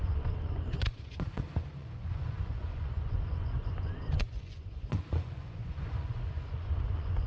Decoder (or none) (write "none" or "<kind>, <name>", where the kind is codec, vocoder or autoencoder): vocoder, Vocos